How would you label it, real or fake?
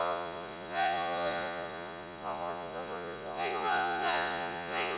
fake